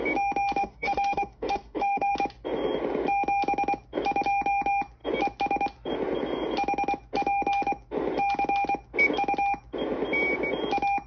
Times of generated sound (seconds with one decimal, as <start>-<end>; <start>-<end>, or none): 0.6-2.1